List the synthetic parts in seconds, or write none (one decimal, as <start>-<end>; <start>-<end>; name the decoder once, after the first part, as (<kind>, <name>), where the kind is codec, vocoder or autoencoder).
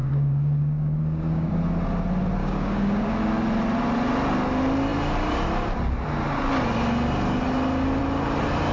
0.0-1.5 (codec, DAC); 2.4-3.1